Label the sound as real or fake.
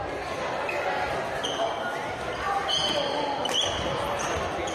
real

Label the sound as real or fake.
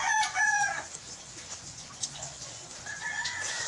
fake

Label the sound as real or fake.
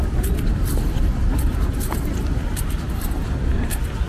real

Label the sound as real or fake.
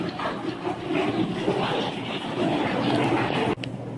real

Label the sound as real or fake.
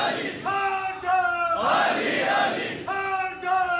real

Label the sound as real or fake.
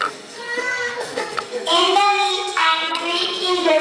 fake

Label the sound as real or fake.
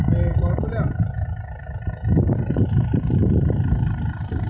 real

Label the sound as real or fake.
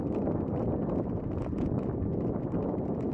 real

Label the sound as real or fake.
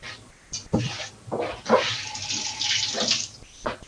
real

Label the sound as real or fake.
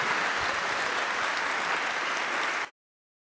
real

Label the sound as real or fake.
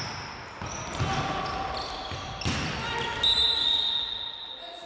real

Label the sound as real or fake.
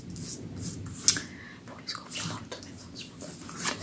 real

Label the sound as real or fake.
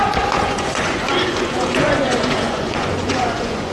fake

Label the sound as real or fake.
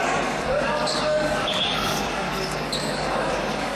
fake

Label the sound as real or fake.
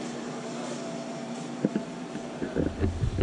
fake